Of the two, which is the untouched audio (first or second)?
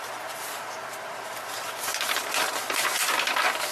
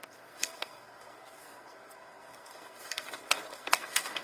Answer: first